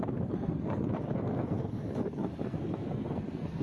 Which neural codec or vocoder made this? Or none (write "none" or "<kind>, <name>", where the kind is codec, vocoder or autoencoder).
codec, SNAC